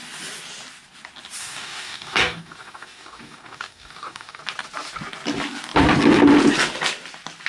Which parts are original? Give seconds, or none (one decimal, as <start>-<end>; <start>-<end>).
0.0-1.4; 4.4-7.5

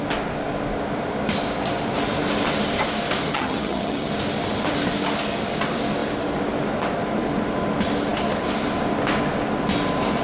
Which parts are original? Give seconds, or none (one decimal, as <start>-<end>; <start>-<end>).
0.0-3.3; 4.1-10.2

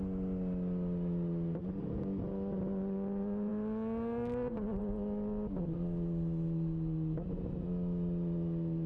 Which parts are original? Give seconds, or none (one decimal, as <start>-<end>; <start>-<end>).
0.0-8.9